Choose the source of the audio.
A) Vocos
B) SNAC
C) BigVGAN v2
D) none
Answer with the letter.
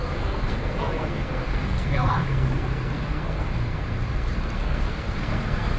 B